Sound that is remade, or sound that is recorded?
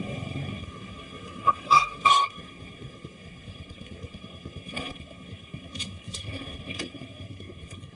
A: remade